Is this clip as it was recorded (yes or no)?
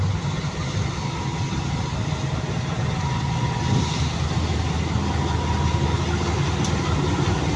yes